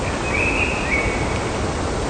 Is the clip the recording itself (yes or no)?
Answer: yes